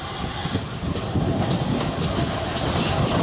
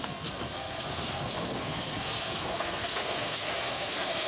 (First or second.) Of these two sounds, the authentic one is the first